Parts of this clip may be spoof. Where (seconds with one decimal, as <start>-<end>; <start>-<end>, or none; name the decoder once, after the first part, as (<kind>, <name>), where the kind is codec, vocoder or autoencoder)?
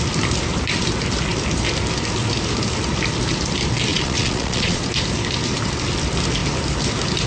3.9-4.8 (vocoder, Vocos)